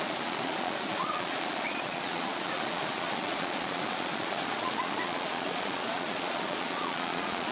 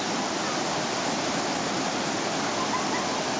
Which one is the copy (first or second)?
first